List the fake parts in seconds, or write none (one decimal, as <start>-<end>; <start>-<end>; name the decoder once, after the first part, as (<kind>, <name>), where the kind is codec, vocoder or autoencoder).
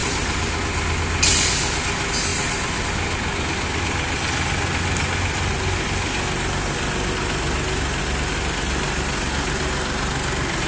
0.0-0.6 (vocoder, BigVGAN v2); 2.3-2.9